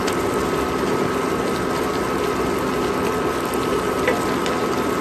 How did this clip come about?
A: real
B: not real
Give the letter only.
A